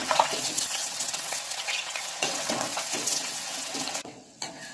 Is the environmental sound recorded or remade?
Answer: remade